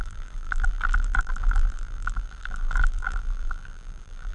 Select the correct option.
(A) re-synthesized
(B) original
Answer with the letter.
A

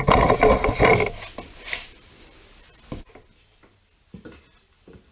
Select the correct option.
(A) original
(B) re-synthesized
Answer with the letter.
A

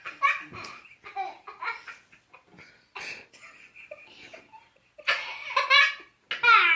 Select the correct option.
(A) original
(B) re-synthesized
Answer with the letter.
A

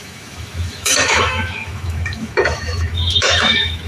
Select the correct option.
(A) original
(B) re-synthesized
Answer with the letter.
B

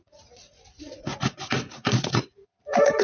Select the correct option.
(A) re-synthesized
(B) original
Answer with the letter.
A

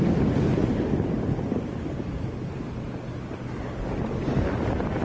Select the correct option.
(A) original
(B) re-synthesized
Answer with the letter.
A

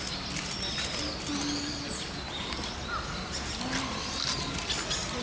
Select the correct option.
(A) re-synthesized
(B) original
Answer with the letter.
B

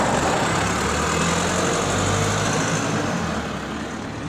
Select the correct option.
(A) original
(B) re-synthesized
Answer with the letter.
A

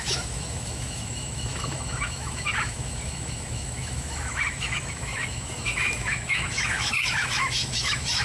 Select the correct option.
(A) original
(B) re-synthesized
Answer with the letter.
B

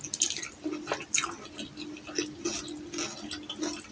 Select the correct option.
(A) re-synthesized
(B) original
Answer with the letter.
B